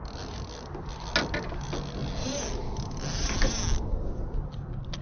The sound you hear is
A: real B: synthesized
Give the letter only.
A